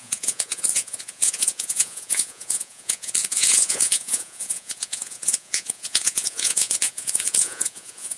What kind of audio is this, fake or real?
fake